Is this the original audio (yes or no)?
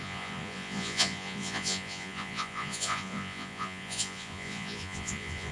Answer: no